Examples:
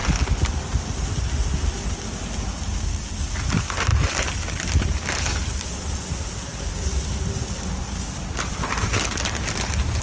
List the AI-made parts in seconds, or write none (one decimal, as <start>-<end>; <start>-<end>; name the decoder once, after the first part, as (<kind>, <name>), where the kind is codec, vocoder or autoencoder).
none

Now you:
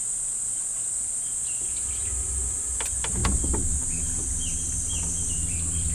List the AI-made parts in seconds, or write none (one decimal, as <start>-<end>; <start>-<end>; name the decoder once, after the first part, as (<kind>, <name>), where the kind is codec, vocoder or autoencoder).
none

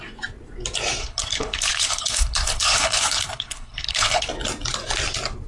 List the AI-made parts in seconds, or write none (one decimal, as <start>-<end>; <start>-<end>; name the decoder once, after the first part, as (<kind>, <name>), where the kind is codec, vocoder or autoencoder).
1.0-4.3 (codec, HILCodec)

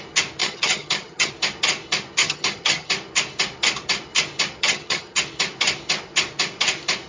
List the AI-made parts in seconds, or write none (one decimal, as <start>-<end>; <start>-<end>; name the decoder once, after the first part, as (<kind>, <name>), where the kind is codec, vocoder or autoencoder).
0.4-1.3 (vocoder, HiFi-GAN); 2.2-2.9; 4.6-5.2

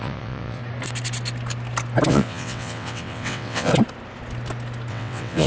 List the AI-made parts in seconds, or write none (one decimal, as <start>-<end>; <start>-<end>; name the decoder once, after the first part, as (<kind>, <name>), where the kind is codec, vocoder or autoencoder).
0.0-0.6 (vocoder, WaveNeXt); 2.1-3.7; 4.9-5.5

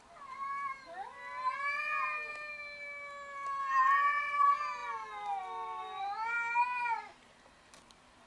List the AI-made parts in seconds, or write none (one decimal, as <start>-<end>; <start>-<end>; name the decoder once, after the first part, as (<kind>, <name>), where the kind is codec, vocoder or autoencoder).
none

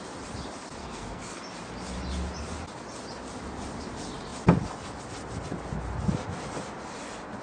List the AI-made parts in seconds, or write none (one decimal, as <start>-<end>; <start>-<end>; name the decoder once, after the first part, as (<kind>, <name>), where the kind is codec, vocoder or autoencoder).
0.8-1.4 (codec, SNAC)

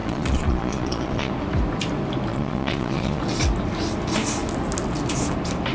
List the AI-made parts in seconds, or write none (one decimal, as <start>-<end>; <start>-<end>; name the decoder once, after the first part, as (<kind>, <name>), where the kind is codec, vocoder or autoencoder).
0.0-1.3 (vocoder, Vocos); 2.3-3.2